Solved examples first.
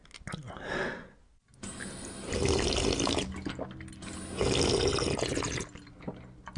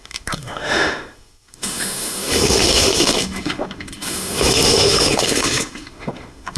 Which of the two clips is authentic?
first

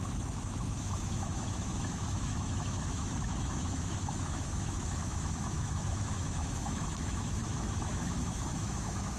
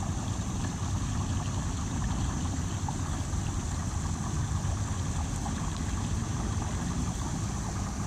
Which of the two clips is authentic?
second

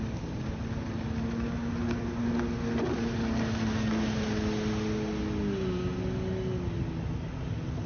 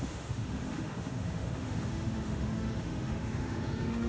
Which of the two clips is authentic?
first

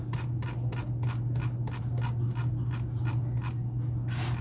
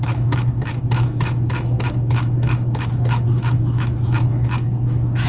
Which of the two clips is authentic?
first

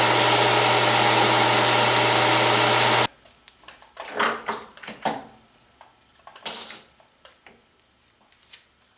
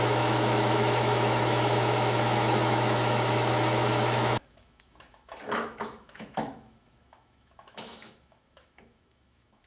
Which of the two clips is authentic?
first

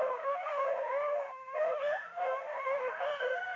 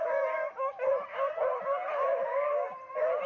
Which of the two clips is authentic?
second